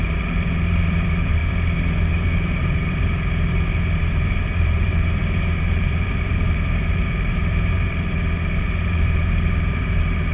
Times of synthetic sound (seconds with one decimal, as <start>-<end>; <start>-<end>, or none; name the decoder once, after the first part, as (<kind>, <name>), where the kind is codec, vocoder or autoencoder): 0.0-1.4 (vocoder, BigVGAN v2); 2.1-10.3